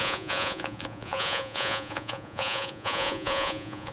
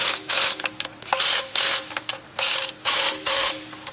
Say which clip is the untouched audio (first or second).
second